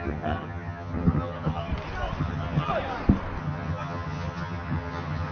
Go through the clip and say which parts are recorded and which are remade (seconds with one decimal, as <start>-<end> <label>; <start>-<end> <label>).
0.0-1.7 remade; 1.7-2.2 recorded; 2.2-2.7 remade; 2.7-3.4 recorded; 3.4-5.3 remade